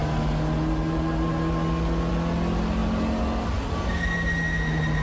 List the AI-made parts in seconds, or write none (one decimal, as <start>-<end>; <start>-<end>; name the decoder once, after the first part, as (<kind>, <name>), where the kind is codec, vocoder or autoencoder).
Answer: none

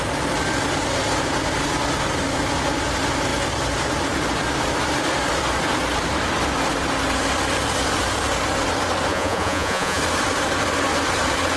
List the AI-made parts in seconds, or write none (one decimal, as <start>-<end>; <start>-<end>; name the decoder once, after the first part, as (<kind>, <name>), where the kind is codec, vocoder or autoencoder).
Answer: 9.1-10.0 (vocoder, Vocos)